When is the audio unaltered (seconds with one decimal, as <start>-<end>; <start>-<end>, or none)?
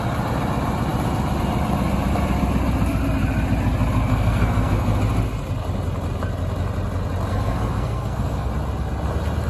0.0-4.1; 5.0-7.3; 8.5-9.5